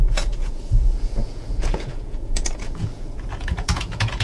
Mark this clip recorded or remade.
remade